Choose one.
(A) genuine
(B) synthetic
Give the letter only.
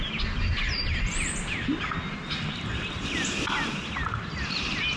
A